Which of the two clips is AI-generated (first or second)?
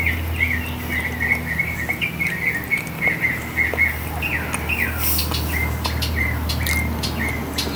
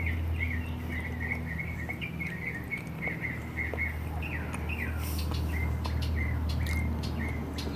second